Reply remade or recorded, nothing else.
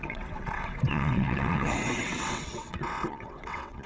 remade